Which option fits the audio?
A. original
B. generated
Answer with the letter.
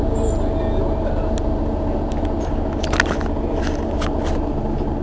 A